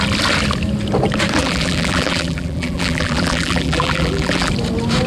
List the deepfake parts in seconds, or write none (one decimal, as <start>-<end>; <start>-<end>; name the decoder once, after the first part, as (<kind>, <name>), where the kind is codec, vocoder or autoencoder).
1.4-4.5 (vocoder, BigVGAN v2)